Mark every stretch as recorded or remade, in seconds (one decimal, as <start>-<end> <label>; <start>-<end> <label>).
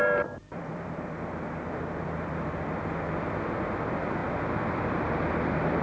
0.0-0.4 recorded; 0.4-2.4 remade; 2.4-4.2 recorded; 4.2-5.3 remade; 5.3-5.8 recorded